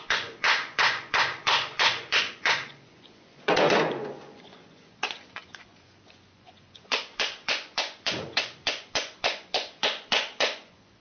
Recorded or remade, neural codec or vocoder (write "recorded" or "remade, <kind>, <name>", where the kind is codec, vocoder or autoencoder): remade, vocoder, Vocos